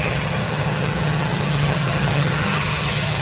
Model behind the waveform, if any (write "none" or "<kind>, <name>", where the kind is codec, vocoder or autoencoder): vocoder, HiFi-GAN